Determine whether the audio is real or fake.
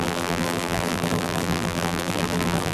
fake